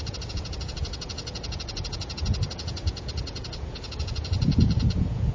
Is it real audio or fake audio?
fake